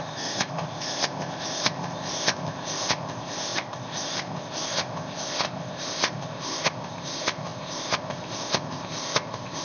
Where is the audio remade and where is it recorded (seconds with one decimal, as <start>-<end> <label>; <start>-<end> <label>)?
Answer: 0.0-9.6 remade